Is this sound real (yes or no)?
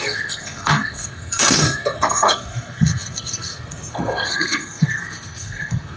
no